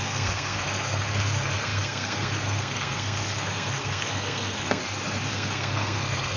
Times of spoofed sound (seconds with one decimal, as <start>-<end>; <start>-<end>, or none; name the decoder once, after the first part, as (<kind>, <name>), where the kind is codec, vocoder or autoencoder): 0.0-4.8 (codec, SNAC); 5.3-6.4